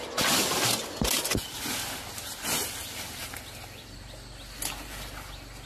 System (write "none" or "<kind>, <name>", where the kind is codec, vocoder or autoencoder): none